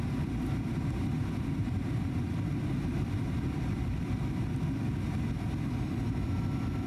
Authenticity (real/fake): fake